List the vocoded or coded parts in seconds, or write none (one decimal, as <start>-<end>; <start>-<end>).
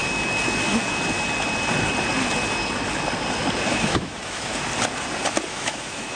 3.7-4.5; 5.5-6.2